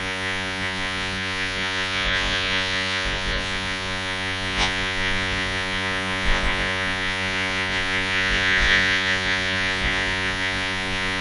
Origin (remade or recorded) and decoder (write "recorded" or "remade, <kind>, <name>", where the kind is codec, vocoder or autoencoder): remade, vocoder, Vocos